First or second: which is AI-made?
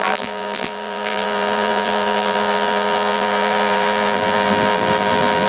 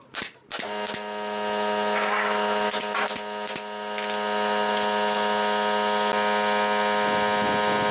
first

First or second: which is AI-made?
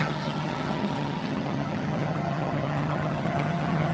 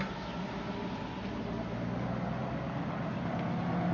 first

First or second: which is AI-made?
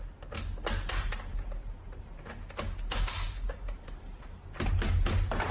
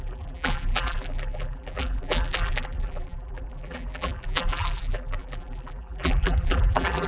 second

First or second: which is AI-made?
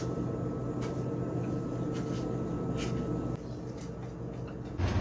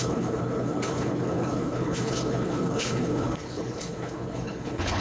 second